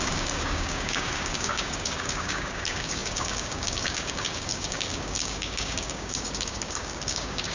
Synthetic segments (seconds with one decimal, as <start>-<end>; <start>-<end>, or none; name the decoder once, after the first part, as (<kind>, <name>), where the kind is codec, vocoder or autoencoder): 0.0-7.5 (codec, DAC)